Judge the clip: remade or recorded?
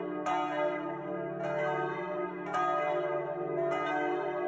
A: recorded